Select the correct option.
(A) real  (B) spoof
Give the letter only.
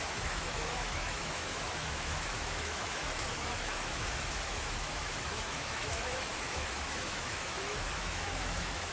B